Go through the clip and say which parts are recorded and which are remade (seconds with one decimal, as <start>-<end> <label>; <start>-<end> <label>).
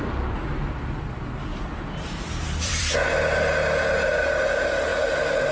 0.0-1.5 recorded; 1.5-2.9 remade; 2.9-5.5 recorded